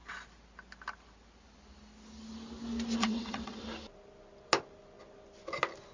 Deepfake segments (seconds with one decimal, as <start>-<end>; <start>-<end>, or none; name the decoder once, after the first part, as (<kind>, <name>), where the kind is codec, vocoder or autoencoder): 3.0-3.7 (vocoder, WaveNeXt)